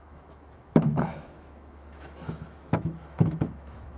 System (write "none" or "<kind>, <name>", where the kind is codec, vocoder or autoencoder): autoencoder, DAC-VAE